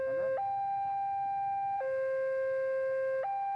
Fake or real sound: real